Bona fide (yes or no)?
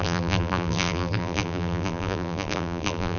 no